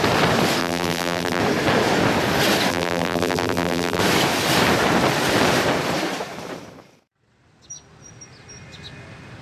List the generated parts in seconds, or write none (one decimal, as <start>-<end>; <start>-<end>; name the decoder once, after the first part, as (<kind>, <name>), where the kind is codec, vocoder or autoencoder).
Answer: 0.6-1.4 (vocoder, BigVGAN v2); 2.7-4.0